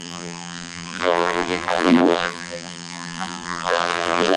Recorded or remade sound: remade